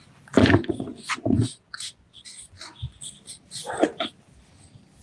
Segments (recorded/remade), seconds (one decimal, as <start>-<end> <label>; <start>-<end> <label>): 0.0-0.4 recorded; 0.4-3.0 remade; 3.0-5.0 recorded